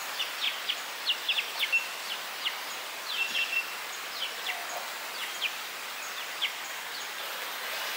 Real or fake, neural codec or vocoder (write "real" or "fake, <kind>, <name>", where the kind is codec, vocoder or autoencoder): real